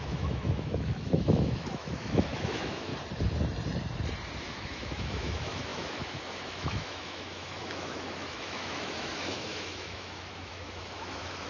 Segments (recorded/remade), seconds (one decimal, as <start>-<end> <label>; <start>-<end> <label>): 0.0-2.9 remade; 2.9-4.4 recorded; 4.4-11.5 remade